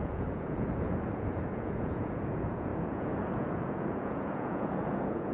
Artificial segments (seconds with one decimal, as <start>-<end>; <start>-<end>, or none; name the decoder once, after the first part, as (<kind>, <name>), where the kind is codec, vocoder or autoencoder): 0.0-5.3 (vocoder, Vocos)